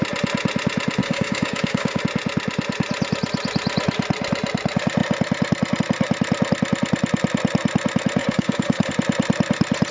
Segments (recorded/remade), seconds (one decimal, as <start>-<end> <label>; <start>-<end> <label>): 0.0-1.0 recorded; 1.0-2.0 remade; 2.0-8.2 recorded; 8.2-8.9 remade; 8.9-9.9 recorded